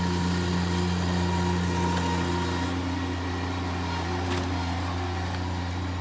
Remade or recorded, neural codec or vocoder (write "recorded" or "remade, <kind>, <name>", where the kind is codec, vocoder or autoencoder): recorded